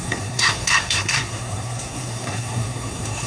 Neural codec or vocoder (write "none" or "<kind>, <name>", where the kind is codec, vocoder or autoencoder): codec, SNAC